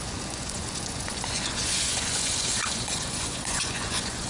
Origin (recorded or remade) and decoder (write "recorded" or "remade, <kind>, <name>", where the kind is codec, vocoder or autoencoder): remade, vocoder, Vocos